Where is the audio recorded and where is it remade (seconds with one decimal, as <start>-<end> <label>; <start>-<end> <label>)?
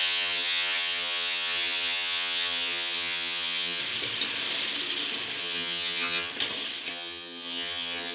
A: 0.0-3.8 remade; 3.8-5.4 recorded; 5.4-6.3 remade; 6.3-6.9 recorded; 6.9-8.1 remade